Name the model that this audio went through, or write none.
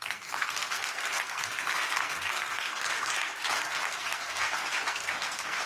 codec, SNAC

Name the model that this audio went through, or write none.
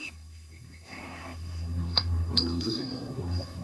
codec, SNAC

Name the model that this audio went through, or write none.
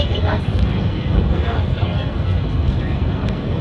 codec, SNAC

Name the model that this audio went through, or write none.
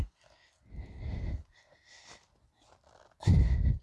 none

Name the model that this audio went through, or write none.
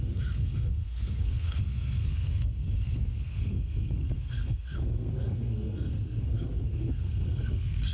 codec, SNAC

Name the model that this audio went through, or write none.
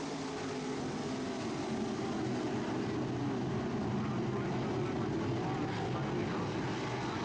none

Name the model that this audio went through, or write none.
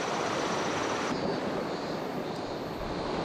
none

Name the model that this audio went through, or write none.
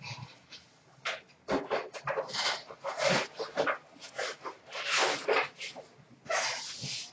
none